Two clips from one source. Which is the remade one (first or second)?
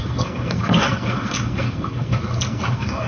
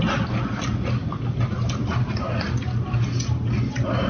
first